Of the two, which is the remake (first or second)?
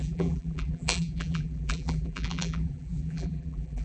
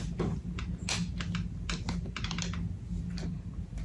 first